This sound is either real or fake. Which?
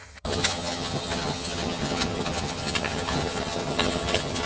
fake